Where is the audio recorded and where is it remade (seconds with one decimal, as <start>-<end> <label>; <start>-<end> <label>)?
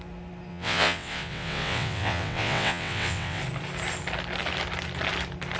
0.0-0.5 recorded; 0.5-3.4 remade; 3.4-5.6 recorded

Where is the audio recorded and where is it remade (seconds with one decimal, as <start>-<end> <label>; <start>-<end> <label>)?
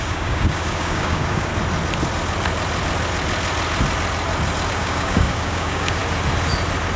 0.0-1.5 remade; 1.5-4.7 recorded; 4.7-6.0 remade; 6.0-7.0 recorded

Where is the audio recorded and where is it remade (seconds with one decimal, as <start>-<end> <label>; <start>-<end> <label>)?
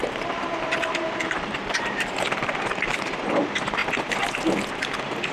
0.0-3.2 remade; 3.2-5.3 recorded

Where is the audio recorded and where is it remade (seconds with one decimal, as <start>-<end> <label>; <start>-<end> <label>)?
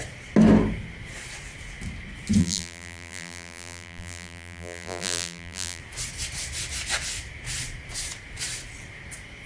0.0-2.4 recorded; 2.4-5.8 remade; 5.8-9.5 recorded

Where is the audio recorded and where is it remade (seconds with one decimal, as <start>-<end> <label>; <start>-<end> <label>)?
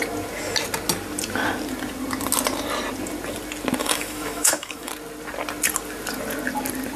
0.0-3.8 recorded; 3.8-4.9 remade; 4.9-7.0 recorded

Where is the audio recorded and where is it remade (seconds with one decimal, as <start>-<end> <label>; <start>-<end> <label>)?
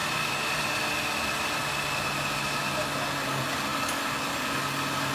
0.0-5.1 recorded